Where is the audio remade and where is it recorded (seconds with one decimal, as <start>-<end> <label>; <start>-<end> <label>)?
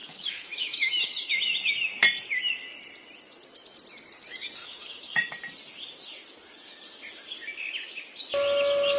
0.0-1.3 remade; 1.3-4.6 recorded; 4.6-5.3 remade; 5.3-9.0 recorded